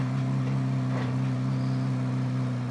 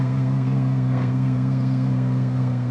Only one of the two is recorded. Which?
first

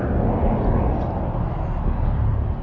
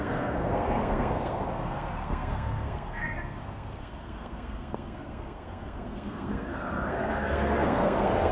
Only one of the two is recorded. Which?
first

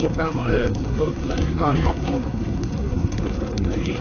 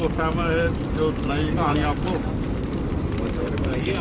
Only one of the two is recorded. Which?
second